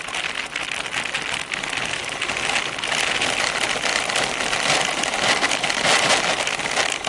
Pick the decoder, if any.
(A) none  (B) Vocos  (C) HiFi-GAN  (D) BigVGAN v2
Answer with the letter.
A